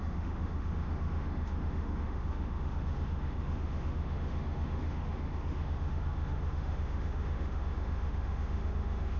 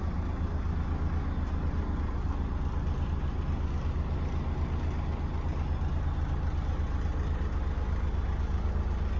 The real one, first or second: second